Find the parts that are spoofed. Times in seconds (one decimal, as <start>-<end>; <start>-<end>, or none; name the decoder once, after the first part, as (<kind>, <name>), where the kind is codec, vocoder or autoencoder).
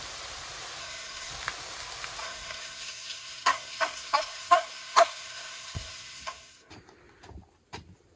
0.8-1.3 (codec, SNAC); 2.2-6.7